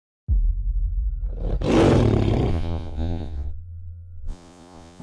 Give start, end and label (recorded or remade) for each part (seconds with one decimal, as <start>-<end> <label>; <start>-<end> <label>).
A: 0.0-2.5 recorded; 2.5-5.0 remade